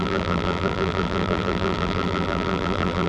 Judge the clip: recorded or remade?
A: remade